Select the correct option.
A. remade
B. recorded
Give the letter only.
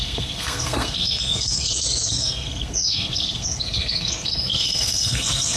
A